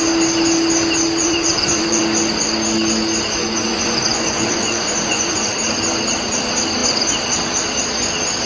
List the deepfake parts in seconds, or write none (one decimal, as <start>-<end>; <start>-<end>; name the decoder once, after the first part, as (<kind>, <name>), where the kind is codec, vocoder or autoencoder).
1.2-2.0 (vocoder, Vocos); 3.4-5.5